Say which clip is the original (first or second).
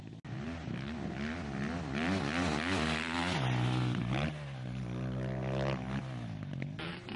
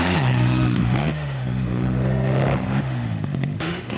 first